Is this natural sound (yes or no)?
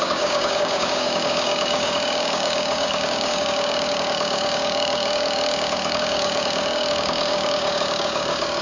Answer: no